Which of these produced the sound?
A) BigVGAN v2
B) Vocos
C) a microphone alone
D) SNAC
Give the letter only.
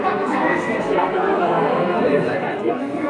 D